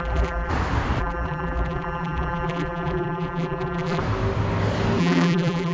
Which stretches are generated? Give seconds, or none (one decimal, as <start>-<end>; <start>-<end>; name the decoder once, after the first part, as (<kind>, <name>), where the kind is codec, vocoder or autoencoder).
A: 0.0-0.5 (vocoder, BigVGAN v2); 1.0-4.0; 5.0-5.7

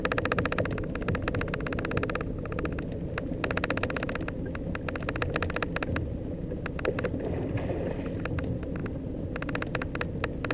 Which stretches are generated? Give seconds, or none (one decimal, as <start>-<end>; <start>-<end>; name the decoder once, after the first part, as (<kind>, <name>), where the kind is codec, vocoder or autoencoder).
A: none

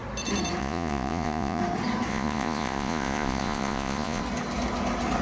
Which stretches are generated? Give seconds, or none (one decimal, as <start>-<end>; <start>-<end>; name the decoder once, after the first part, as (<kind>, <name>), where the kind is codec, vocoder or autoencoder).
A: 0.6-1.6 (vocoder, Vocos); 2.1-4.2

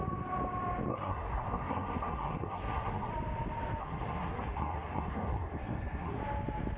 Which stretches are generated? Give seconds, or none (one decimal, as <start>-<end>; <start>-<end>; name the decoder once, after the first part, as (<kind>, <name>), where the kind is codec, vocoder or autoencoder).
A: 0.9-3.1 (codec, SNAC); 3.8-6.2

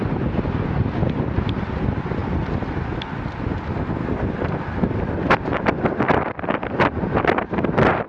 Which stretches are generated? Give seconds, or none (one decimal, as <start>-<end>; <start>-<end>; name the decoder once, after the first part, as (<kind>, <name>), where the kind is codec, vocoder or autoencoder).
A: none

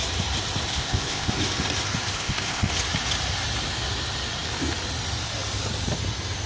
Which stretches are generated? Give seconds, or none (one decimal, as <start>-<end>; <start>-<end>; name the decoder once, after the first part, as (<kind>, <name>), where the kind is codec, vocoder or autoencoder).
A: 0.7-1.3 (codec, ZipCodec); 2.1-2.7

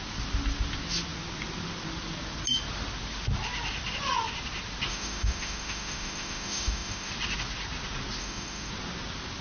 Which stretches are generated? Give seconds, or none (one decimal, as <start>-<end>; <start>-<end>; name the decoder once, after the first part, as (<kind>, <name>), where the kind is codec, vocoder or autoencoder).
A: 4.9-7.1 (autoencoder, DAC-VAE); 8.2-8.7

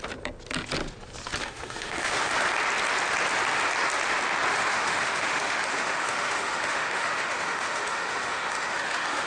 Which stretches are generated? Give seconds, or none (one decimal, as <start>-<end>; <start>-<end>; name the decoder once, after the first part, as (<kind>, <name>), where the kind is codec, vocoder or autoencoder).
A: 1.4-2.3 (autoencoder, DAC-VAE); 4.5-9.3